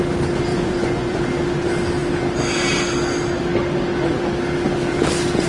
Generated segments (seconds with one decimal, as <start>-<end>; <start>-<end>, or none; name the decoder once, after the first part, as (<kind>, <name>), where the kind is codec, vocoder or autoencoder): 0.5-1.2 (vocoder, Vocos)